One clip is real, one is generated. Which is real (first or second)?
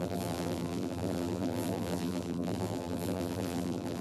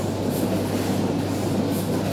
second